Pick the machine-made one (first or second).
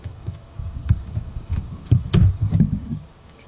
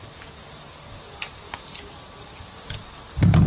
first